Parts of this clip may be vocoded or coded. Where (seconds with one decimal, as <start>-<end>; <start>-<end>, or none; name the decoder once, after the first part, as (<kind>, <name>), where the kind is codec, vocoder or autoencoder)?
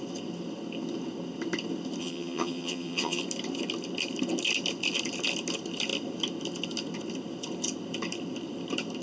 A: 2.0-3.2 (vocoder, HiFi-GAN)